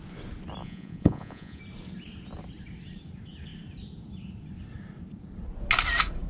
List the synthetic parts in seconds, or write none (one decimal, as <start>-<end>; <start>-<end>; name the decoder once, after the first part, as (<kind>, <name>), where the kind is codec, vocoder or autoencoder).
0.6-1.6 (vocoder, Vocos)